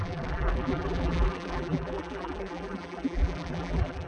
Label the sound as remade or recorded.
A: remade